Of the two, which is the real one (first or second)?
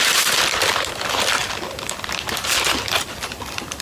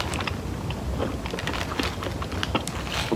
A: second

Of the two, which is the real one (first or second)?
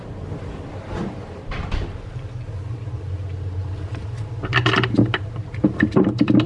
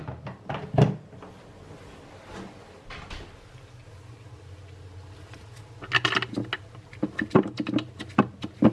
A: second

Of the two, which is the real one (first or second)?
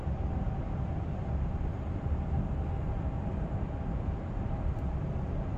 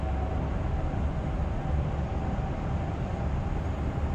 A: second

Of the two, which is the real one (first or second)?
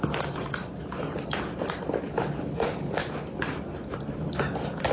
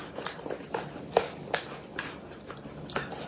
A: second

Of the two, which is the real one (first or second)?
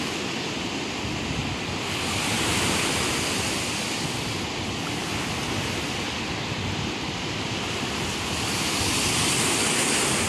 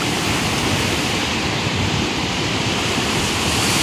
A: first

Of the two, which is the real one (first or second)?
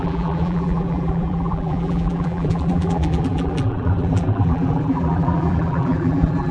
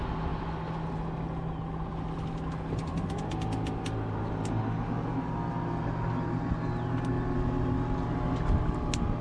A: second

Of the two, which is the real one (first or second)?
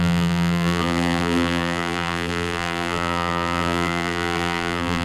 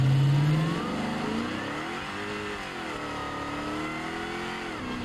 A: second